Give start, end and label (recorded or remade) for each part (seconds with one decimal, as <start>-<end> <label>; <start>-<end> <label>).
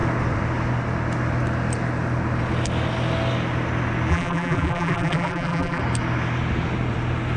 0.0-4.1 recorded; 4.1-5.8 remade; 5.8-7.4 recorded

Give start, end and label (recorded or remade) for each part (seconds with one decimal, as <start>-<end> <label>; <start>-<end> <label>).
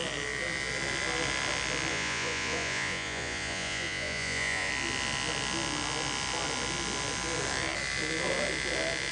0.0-1.9 recorded; 1.9-4.7 remade; 4.7-9.1 recorded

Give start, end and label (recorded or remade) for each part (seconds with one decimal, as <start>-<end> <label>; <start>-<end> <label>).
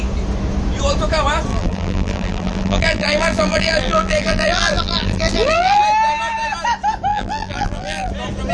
0.0-1.5 recorded; 1.5-5.8 remade; 5.8-7.1 recorded; 7.1-8.1 remade; 8.1-8.5 recorded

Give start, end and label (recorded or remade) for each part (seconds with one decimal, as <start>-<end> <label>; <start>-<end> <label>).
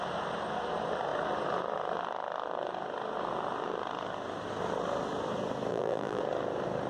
0.0-5.7 recorded; 5.7-6.2 remade; 6.2-6.9 recorded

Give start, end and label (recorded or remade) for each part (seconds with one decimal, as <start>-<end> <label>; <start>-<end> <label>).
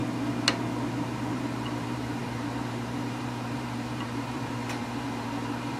0.0-1.3 recorded; 1.3-5.8 remade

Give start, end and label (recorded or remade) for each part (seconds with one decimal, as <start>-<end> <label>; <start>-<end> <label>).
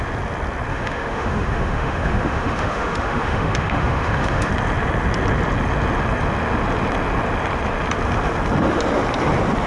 0.0-0.7 recorded; 0.7-4.5 remade; 4.5-9.7 recorded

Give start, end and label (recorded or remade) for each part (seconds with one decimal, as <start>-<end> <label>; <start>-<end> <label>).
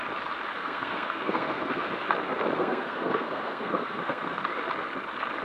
0.0-0.5 recorded; 0.5-2.0 remade; 2.0-2.6 recorded; 2.6-4.4 remade; 4.4-5.4 recorded